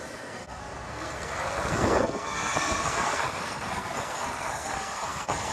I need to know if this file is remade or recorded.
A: remade